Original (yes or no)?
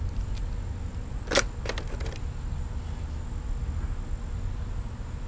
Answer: yes